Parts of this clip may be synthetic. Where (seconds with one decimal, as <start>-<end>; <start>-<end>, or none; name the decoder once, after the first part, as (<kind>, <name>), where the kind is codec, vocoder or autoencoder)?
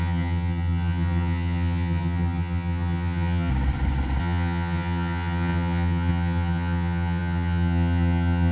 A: 0.0-3.5 (vocoder, HiFi-GAN); 4.2-8.5